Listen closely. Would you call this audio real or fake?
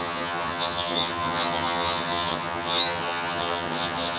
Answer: fake